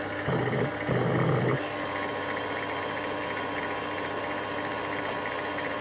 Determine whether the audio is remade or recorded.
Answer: recorded